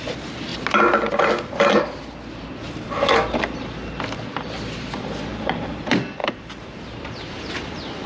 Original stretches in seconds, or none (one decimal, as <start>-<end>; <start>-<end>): 0.0-2.6; 3.4-5.3; 5.8-6.2; 6.8-8.1